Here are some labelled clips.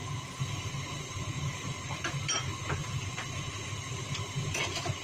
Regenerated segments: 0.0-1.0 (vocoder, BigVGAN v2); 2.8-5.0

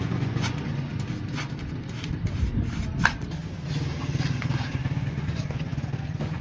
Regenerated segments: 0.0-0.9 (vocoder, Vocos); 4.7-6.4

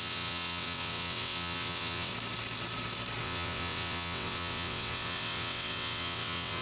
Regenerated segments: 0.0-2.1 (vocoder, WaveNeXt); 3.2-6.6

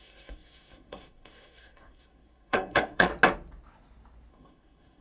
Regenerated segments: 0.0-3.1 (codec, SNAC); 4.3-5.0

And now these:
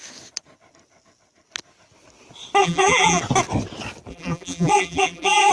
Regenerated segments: 2.6-3.2 (vocoder, BigVGAN v2); 4.1-5.5

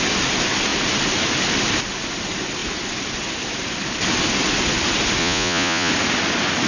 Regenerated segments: 5.2-5.9 (vocoder, Vocos)

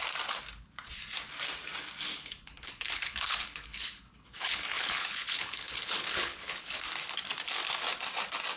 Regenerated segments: 2.1-6.7 (codec, HILCodec)